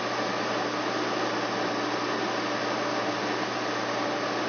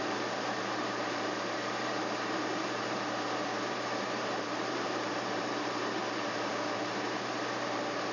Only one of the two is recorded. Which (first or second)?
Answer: first